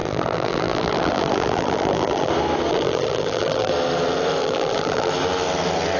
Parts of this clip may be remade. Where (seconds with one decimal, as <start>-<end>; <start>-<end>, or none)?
0.0-2.3; 2.7-3.7; 4.4-5.1